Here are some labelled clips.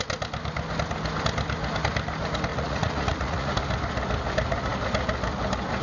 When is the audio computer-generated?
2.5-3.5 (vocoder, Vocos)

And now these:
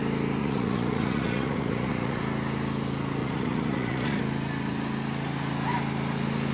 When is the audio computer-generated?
0.4-2.2 (vocoder, Vocos); 3.2-4.2

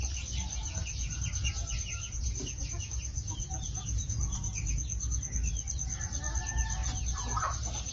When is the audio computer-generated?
0.6-5.3 (vocoder, Vocos); 6.8-7.9

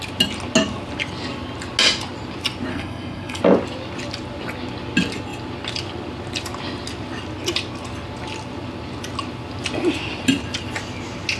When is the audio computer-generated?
2.7-3.4 (codec, SNAC)

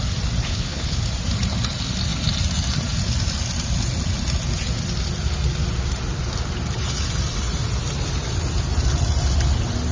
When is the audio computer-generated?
0.4-1.0 (codec, HILCodec)